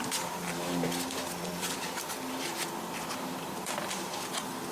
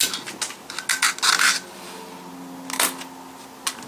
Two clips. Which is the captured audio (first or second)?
second